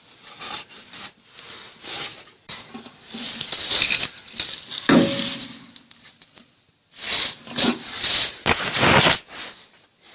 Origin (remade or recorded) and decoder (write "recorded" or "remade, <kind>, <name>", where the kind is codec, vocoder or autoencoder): recorded